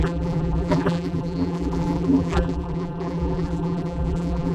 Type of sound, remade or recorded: remade